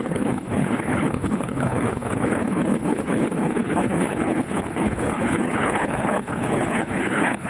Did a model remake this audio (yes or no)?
yes